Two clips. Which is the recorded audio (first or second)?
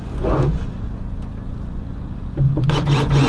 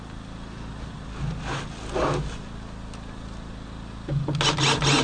second